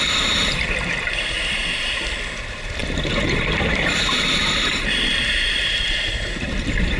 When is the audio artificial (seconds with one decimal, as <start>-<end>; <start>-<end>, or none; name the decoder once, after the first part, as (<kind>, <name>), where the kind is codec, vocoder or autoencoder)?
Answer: 0.0-1.6 (vocoder, BigVGAN v2); 2.3-7.0